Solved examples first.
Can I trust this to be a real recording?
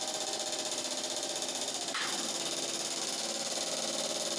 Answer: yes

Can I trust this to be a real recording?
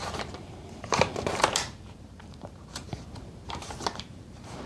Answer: no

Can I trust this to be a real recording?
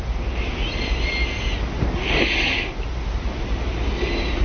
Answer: yes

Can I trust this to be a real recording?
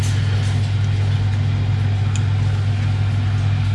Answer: yes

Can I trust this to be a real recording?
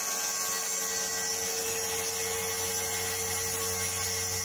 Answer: yes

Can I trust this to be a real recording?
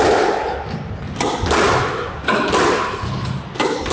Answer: yes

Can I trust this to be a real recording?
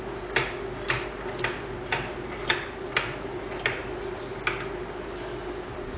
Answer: yes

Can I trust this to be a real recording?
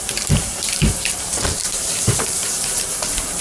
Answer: no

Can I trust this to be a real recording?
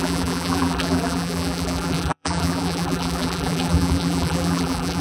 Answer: no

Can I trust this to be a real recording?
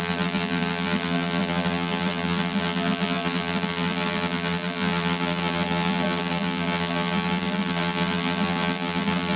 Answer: no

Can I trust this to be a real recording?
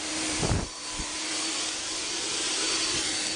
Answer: yes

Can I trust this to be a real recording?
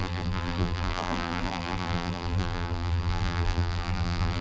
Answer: no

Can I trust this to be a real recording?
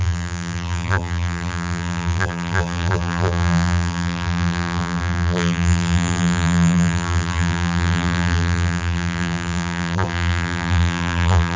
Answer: no